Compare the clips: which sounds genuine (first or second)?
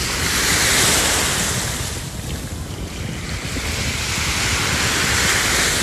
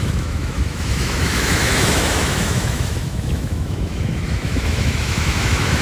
first